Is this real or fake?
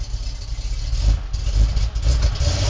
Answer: real